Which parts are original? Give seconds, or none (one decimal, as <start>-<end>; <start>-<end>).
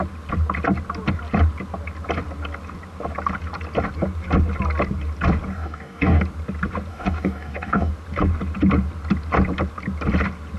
0.0-5.5; 6.2-6.9; 7.9-10.6